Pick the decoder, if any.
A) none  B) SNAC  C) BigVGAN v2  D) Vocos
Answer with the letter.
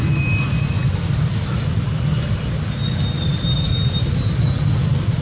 C